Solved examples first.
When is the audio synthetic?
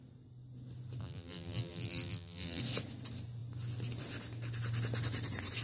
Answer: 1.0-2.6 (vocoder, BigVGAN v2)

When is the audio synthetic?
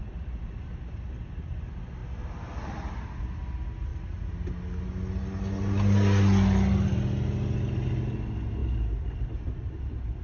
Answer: 2.0-2.7 (vocoder, BigVGAN v2); 8.6-10.2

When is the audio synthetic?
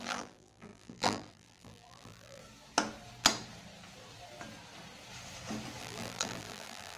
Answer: 0.0-2.4 (vocoder, BigVGAN v2); 5.8-7.0